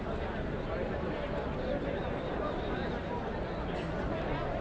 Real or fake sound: real